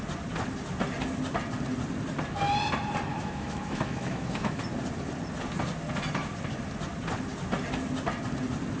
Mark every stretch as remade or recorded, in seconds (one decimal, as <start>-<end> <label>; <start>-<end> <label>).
0.0-3.1 recorded; 3.1-4.6 remade; 4.6-8.8 recorded